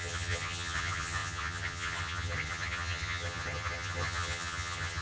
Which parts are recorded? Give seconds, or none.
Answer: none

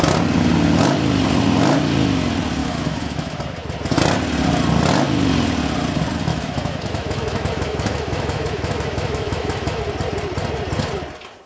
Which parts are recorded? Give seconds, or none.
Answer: 0.0-2.6; 3.4-6.3; 9.8-11.5

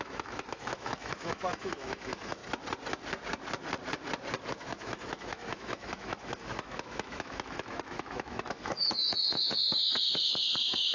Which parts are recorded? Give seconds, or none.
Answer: 2.4-4.5

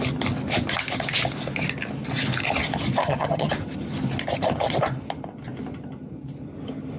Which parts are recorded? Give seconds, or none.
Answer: 0.0-3.0; 3.5-7.0